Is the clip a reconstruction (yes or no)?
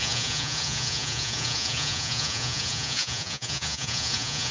yes